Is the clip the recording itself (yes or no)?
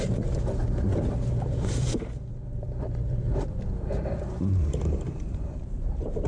no